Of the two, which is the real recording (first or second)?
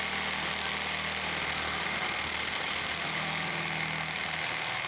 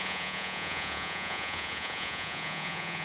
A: first